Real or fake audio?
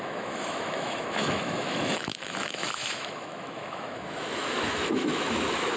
fake